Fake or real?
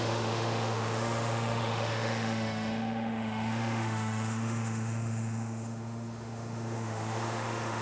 fake